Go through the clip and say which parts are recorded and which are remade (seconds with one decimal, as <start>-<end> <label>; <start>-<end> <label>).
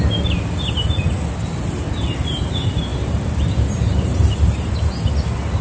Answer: 0.0-2.9 recorded; 2.9-4.9 remade; 4.9-5.6 recorded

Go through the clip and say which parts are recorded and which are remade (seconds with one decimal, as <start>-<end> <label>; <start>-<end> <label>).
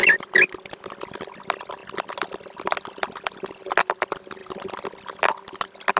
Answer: 0.0-0.7 remade; 0.7-1.8 recorded; 1.8-2.3 remade; 2.3-6.0 recorded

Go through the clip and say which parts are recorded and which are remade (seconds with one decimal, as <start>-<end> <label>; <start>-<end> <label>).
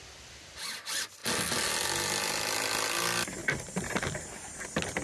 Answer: 0.0-3.4 recorded; 3.4-4.6 remade; 4.6-5.0 recorded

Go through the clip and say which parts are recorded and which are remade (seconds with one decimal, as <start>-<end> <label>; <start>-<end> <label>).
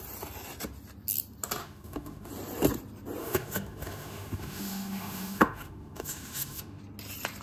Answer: 0.0-1.6 recorded; 1.6-2.3 remade; 2.3-3.2 recorded; 3.2-6.8 remade; 6.8-7.4 recorded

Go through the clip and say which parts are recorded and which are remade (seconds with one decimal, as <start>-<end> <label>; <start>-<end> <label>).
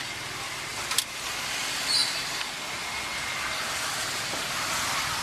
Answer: 0.0-5.2 recorded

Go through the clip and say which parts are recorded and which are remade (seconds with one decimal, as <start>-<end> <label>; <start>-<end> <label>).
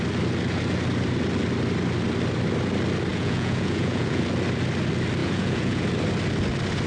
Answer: 0.0-3.1 recorded; 3.1-4.2 remade; 4.2-5.2 recorded; 5.2-5.8 remade; 5.8-6.9 recorded